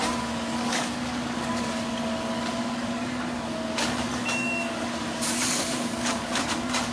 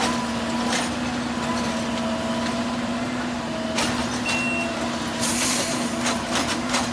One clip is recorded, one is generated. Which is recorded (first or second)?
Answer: second